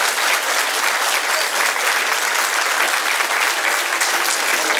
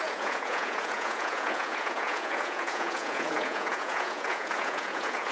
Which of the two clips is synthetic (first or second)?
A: second